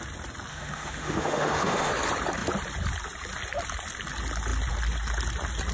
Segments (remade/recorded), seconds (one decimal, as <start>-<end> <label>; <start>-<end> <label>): 0.0-0.5 recorded; 0.5-1.9 remade; 1.9-5.7 recorded